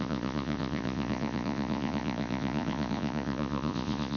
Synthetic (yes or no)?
yes